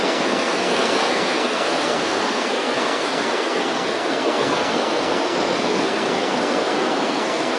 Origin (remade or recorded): remade